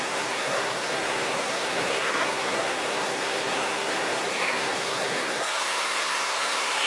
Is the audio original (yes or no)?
no